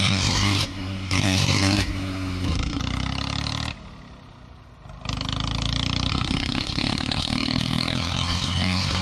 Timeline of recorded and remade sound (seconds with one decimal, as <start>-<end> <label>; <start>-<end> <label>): 0.0-2.8 remade; 2.8-6.1 recorded; 6.1-9.0 remade